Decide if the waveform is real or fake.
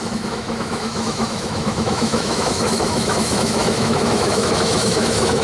fake